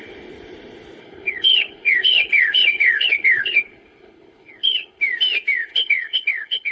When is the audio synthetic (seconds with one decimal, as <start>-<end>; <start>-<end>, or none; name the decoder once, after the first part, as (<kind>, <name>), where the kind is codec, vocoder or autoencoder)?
1.0-5.0 (codec, HILCodec); 5.7-6.7